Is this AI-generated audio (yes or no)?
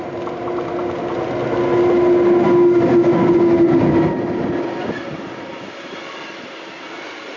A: no